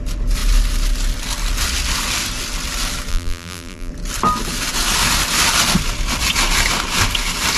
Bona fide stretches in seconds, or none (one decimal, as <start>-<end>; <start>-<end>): 0.0-3.1; 3.9-7.6